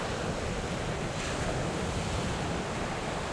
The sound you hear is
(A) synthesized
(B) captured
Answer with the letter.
B